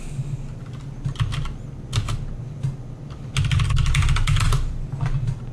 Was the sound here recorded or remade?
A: recorded